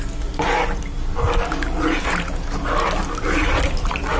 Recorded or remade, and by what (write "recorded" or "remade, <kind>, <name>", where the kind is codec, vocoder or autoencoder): recorded